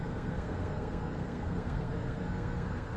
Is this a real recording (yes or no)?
no